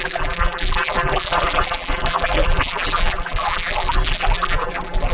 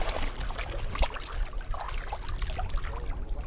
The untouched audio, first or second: second